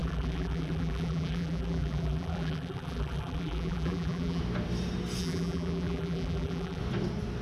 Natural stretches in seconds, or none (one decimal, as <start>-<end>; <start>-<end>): 4.4-5.2; 6.8-7.4